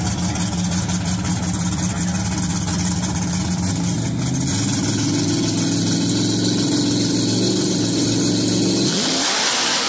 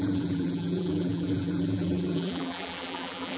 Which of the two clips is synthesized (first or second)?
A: second